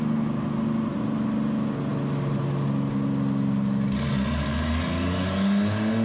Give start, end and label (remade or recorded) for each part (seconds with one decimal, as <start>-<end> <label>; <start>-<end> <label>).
0.0-6.0 recorded